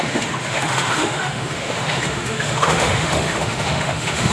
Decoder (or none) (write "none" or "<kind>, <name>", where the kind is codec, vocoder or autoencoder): autoencoder, DAC-VAE